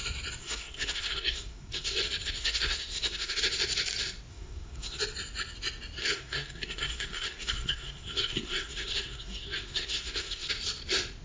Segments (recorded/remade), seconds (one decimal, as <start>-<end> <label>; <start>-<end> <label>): 0.0-0.4 recorded; 0.4-2.0 remade; 2.0-2.4 recorded; 2.4-3.4 remade; 3.4-4.3 recorded; 4.3-5.0 remade; 5.0-6.0 recorded; 6.0-10.5 remade; 10.5-11.2 recorded